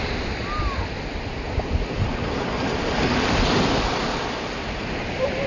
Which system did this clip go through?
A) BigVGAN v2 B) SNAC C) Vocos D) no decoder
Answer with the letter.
D